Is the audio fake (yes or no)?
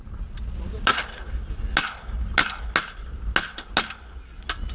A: no